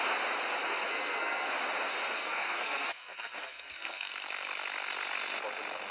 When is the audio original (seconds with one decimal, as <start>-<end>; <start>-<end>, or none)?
0.0-0.7; 1.5-2.2; 4.1-5.9